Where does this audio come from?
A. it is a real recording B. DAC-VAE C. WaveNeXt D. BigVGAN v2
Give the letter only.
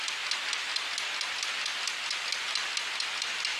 A